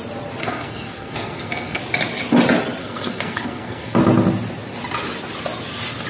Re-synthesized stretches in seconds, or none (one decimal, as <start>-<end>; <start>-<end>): 0.4-1.8; 2.8-4.0